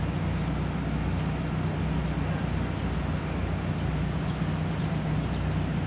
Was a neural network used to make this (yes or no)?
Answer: no